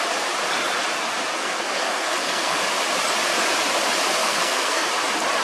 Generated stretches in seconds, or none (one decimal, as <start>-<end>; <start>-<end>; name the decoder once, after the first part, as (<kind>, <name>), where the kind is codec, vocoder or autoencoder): 1.3-2.6 (codec, SNAC); 4.2-4.9